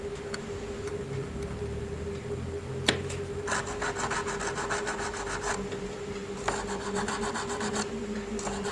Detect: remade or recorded recorded